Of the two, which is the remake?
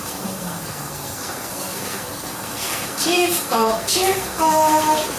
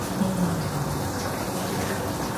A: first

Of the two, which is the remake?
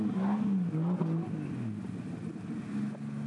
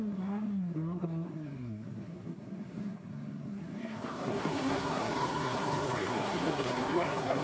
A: second